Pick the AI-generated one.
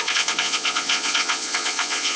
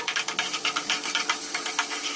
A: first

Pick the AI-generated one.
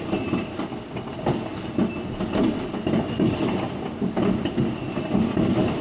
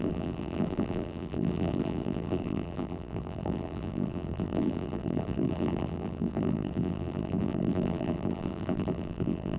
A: second